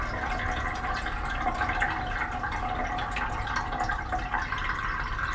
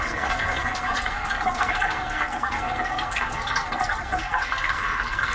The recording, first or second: first